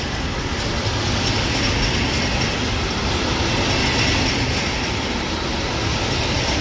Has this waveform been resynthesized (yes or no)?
no